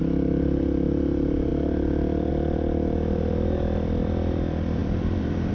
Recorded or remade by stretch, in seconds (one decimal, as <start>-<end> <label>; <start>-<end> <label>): 0.0-4.8 recorded; 4.8-5.5 remade